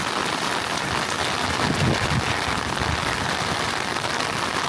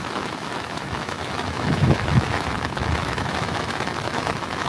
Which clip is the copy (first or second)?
second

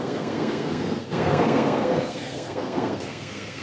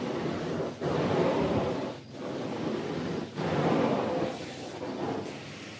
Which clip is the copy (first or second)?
first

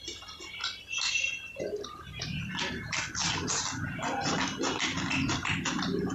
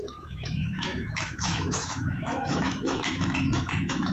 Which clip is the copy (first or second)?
second